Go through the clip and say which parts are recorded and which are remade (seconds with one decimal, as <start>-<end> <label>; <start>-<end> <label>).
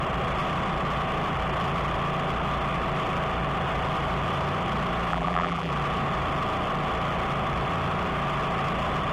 0.0-5.1 recorded; 5.1-5.7 remade; 5.7-9.1 recorded